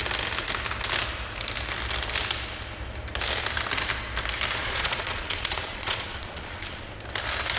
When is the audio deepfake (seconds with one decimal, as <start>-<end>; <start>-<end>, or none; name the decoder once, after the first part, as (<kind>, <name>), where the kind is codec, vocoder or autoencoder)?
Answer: 4.6-6.9 (vocoder, Vocos)